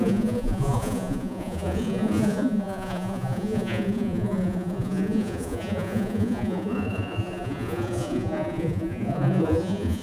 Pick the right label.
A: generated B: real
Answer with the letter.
A